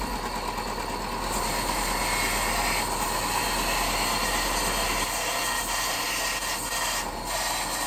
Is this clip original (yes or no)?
yes